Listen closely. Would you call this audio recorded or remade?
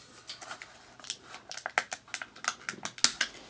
recorded